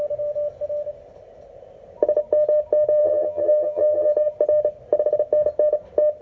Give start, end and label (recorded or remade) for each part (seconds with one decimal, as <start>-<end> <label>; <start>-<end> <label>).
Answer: 0.0-3.0 recorded; 3.0-4.1 remade; 4.1-6.2 recorded